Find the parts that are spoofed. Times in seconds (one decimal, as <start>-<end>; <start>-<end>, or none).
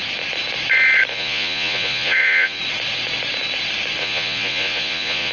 1.1-2.6; 4.0-5.3